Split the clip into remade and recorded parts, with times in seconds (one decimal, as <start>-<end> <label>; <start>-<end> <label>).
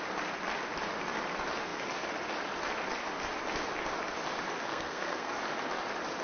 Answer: 0.0-4.7 recorded; 4.7-5.3 remade; 5.3-6.2 recorded